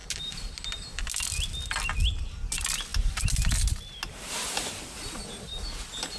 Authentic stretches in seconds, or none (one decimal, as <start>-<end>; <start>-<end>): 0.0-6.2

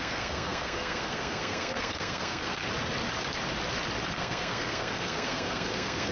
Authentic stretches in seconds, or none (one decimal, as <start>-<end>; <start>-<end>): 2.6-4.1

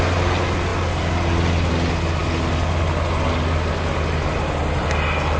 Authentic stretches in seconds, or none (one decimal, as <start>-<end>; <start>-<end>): 0.0-5.4

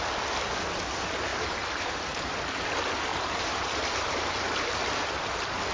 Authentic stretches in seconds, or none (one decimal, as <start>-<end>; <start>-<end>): 0.0-1.3; 2.3-3.1; 4.8-5.7

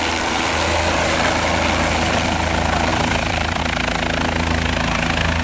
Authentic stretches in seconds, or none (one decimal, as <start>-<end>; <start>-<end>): 0.0-2.9; 3.6-5.4

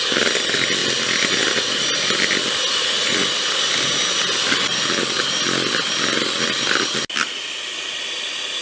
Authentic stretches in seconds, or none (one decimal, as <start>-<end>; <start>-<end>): 0.0-8.6